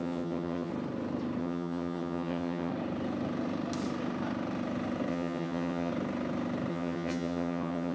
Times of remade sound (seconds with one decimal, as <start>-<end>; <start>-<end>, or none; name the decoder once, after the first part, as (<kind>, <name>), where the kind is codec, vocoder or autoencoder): 0.0-0.7 (vocoder, HiFi-GAN); 1.4-2.7; 5.1-5.9; 6.7-7.9